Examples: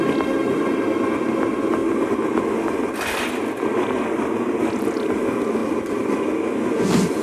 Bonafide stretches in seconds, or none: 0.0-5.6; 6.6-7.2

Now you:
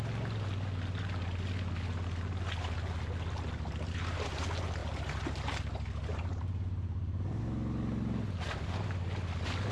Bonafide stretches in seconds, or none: 0.0-4.8; 5.6-6.1; 7.4-9.7

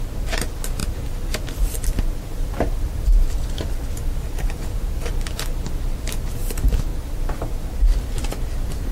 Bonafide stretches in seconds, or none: 0.0-0.8; 5.1-6.9; 7.8-8.9